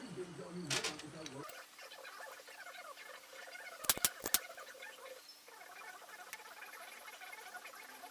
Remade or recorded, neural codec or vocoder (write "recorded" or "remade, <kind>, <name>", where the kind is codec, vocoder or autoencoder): recorded